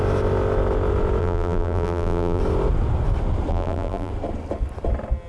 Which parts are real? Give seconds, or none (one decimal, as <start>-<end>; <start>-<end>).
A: 0.0-1.2; 2.4-3.5; 4.1-5.3